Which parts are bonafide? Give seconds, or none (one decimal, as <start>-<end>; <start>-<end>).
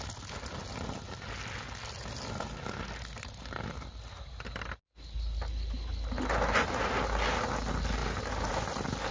0.0-9.1